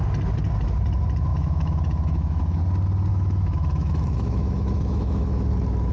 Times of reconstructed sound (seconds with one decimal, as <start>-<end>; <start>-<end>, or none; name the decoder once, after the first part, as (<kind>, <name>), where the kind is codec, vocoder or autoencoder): 1.3-2.6 (autoencoder, DAC-VAE); 3.1-5.5